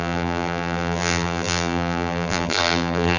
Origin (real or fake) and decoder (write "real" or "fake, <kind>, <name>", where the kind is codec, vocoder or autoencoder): fake, vocoder, BigVGAN v2